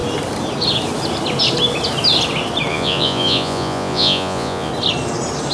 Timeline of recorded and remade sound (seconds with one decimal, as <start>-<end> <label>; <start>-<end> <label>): 0.0-2.7 recorded; 2.7-4.7 remade; 4.7-5.5 recorded